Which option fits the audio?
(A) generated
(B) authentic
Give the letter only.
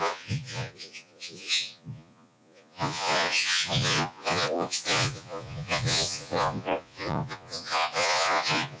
A